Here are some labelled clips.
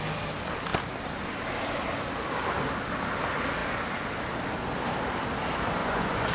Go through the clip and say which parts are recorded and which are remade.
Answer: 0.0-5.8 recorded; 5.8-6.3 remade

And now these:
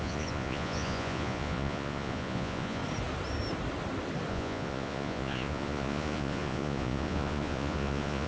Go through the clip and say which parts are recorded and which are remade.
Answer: 0.0-2.8 remade; 2.8-4.3 recorded; 4.3-8.3 remade

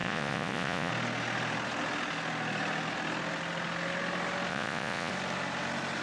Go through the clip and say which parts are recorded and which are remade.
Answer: 0.0-0.9 remade; 0.9-4.5 recorded; 4.5-5.1 remade; 5.1-6.0 recorded

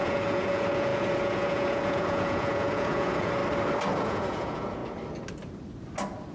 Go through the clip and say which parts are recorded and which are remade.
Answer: 0.0-3.4 remade; 3.4-3.9 recorded; 3.9-4.8 remade; 4.8-6.3 recorded

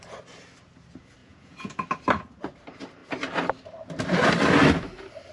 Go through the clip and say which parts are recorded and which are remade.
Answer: 0.0-1.2 recorded; 1.2-1.7 remade; 1.7-5.3 recorded

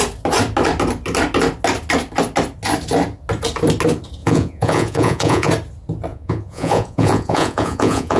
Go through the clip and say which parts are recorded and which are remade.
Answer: 0.0-4.2 recorded; 4.2-5.5 remade; 5.5-6.1 recorded; 6.1-8.2 remade